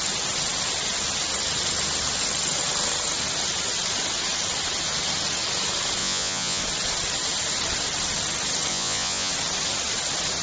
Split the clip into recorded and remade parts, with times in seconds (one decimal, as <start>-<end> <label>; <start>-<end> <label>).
0.0-6.0 recorded; 6.0-6.6 remade; 6.6-8.7 recorded; 8.7-9.3 remade; 9.3-10.4 recorded